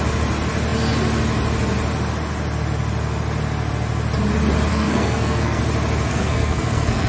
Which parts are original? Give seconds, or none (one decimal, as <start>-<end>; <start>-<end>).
0.0-4.7; 5.6-6.1